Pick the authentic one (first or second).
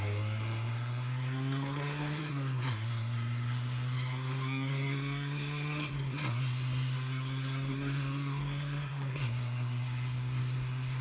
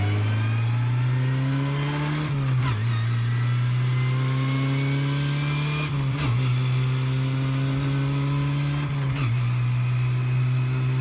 second